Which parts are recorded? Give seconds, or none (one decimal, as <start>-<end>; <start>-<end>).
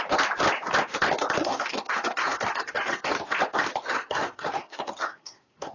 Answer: 0.0-1.4; 3.1-3.8